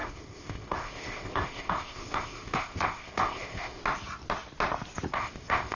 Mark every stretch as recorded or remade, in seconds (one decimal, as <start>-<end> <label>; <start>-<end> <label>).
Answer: 0.0-3.8 remade; 3.8-5.1 recorded; 5.1-5.7 remade